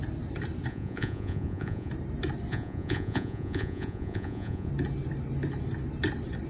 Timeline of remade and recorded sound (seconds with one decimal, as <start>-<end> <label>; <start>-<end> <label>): 0.0-0.7 recorded; 0.7-1.9 remade; 1.9-2.5 recorded; 2.5-4.7 remade; 4.7-6.5 recorded